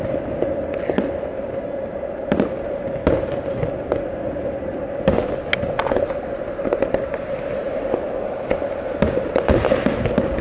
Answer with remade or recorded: recorded